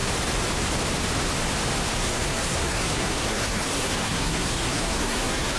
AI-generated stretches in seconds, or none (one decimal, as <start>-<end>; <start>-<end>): 1.9-5.6